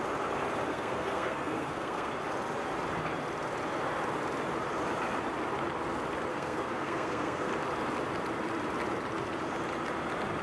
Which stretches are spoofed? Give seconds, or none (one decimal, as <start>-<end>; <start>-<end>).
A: 0.7-2.1; 6.3-7.5